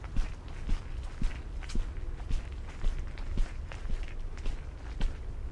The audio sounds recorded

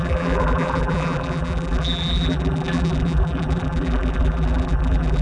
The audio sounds remade